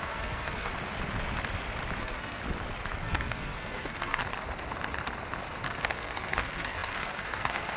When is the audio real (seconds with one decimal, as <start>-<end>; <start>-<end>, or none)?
0.7-2.0; 2.4-3.0; 4.2-5.6